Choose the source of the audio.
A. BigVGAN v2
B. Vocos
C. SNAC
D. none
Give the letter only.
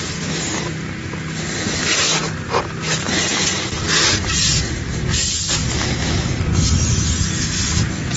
D